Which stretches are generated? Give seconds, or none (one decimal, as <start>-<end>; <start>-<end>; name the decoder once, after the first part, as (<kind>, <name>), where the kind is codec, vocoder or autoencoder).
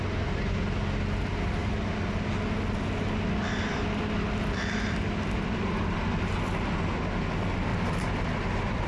3.4-6.1 (vocoder, BigVGAN v2); 7.7-8.9